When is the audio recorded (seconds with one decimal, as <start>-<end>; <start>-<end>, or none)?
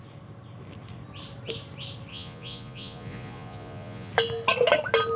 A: 0.0-2.1; 4.1-5.2